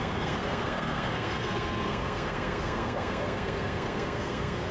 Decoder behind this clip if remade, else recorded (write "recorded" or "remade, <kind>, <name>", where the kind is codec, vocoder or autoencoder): remade, codec, SNAC